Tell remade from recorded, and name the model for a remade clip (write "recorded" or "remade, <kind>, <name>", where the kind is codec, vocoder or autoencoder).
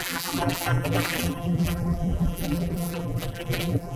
remade, vocoder, BigVGAN v2